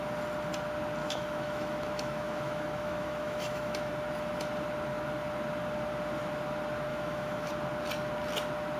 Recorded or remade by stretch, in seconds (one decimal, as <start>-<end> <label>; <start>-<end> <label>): 0.0-1.0 recorded; 1.0-3.9 remade; 3.9-6.9 recorded; 6.9-7.5 remade; 7.5-8.8 recorded